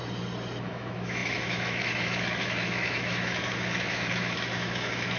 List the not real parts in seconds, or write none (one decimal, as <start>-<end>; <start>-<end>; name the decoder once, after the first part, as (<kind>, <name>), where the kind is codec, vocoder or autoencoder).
0.6-5.2 (autoencoder, DAC-VAE)